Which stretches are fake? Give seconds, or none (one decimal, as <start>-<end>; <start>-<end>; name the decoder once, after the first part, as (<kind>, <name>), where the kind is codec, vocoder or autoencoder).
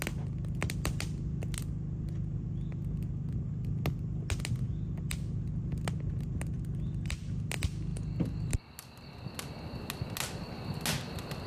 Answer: none